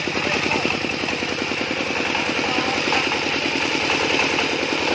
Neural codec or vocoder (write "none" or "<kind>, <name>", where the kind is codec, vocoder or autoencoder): none